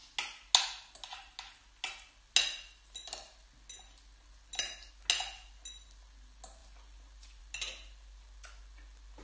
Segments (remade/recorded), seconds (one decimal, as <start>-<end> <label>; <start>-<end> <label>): 0.0-9.2 recorded